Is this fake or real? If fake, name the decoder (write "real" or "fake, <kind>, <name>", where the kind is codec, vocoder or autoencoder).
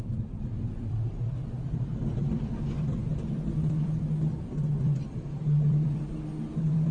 fake, vocoder, BigVGAN v2